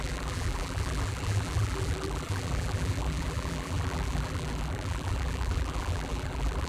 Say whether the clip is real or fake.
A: fake